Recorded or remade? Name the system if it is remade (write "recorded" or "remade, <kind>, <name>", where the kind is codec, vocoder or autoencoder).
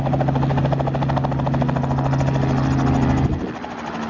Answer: recorded